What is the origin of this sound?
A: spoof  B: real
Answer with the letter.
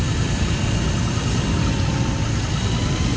B